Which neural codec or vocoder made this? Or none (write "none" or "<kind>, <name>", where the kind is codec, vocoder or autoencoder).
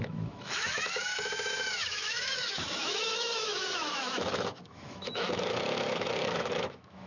autoencoder, DAC-VAE